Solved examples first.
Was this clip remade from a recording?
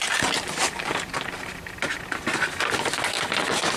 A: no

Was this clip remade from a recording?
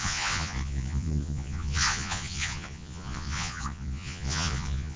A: yes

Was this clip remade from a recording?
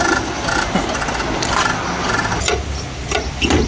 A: no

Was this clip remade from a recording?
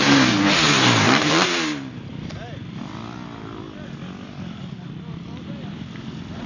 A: no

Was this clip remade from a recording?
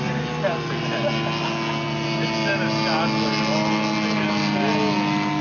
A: no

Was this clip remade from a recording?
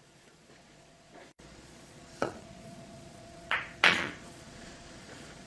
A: yes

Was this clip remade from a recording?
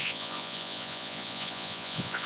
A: yes